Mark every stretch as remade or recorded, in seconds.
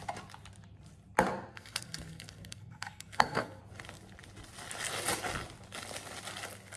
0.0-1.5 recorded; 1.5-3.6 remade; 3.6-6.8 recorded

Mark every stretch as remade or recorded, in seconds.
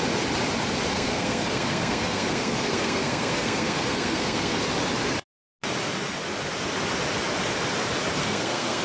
0.0-0.9 recorded; 0.9-4.6 remade; 4.6-8.2 recorded; 8.2-8.8 remade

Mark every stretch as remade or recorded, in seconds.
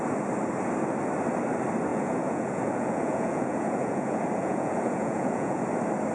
0.0-1.9 recorded; 1.9-5.6 remade; 5.6-6.1 recorded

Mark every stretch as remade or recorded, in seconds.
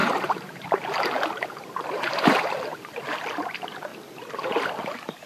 0.0-3.2 remade; 3.2-3.9 recorded; 3.9-4.7 remade; 4.7-5.3 recorded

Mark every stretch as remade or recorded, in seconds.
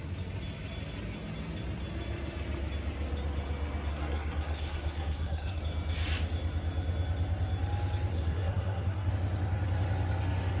0.0-3.9 recorded; 3.9-5.6 remade; 5.6-8.1 recorded; 8.1-9.1 remade; 9.1-10.6 recorded